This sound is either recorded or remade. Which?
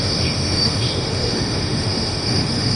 remade